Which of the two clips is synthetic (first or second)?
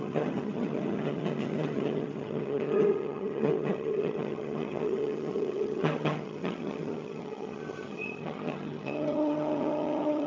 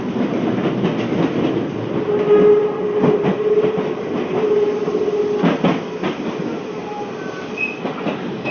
first